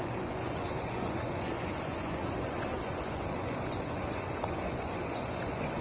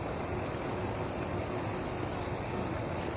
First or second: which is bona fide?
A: second